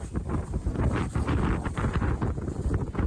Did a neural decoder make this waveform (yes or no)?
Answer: no